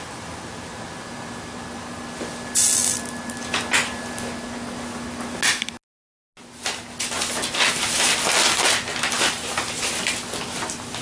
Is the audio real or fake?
real